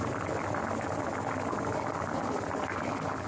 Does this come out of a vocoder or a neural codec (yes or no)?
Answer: no